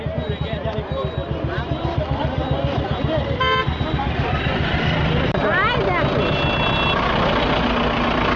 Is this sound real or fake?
real